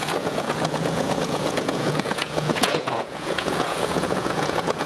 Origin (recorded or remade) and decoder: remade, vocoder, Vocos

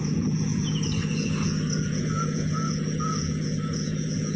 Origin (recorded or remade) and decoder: remade, vocoder, Vocos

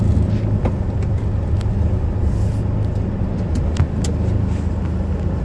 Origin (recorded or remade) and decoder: recorded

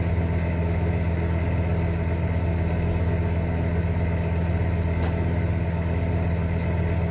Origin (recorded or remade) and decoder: recorded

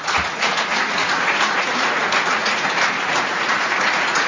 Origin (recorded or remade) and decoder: remade, vocoder, Vocos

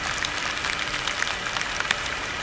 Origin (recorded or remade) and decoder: recorded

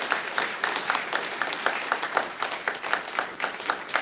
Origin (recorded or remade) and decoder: recorded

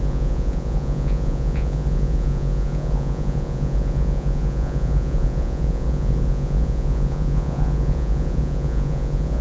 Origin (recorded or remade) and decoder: remade, vocoder, Vocos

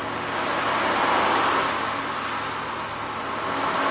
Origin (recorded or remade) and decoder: recorded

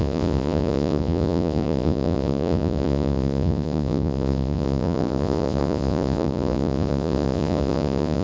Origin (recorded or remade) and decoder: remade, vocoder, Vocos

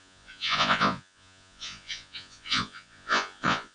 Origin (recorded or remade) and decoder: remade, vocoder, Vocos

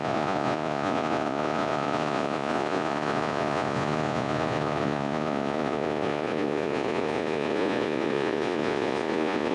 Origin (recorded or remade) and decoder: remade, vocoder, Vocos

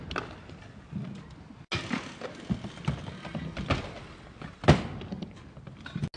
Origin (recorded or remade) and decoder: recorded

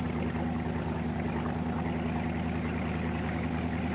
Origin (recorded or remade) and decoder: recorded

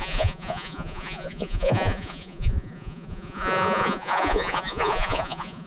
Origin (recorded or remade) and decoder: remade, vocoder, Vocos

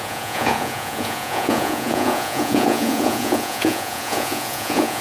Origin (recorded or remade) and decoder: remade, vocoder, Vocos